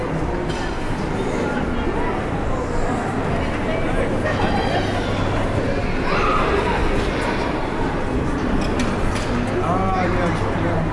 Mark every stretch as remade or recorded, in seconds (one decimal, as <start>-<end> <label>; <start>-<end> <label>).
0.0-10.9 recorded